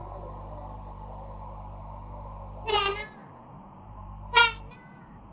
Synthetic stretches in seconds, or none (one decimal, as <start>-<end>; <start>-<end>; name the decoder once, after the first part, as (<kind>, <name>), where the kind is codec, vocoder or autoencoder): 0.0-2.8 (vocoder, BigVGAN v2); 3.2-4.8